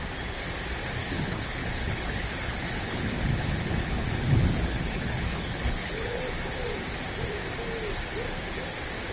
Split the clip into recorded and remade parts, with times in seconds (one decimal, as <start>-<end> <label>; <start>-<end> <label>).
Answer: 0.0-1.0 recorded; 1.0-6.2 remade; 6.2-9.1 recorded